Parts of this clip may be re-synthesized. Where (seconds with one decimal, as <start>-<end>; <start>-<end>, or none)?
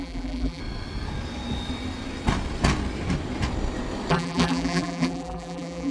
0.0-0.6; 4.1-5.9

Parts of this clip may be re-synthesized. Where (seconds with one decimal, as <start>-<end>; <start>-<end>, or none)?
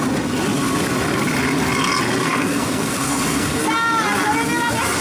2.2-3.6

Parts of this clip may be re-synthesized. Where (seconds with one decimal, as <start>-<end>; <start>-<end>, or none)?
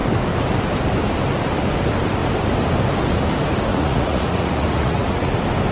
3.7-5.3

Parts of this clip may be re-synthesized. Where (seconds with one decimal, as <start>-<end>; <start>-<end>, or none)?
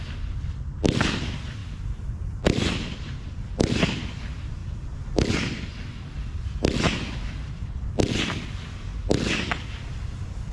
0.0-4.6; 5.3-5.7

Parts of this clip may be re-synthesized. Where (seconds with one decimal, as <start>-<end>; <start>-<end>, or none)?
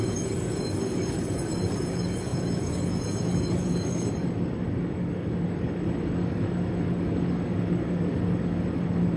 0.0-9.2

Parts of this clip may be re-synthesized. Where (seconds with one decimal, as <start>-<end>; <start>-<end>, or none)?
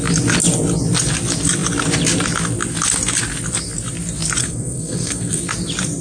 4.4-5.4